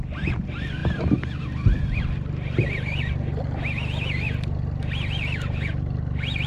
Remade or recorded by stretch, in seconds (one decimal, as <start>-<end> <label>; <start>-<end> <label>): 0.0-6.5 recorded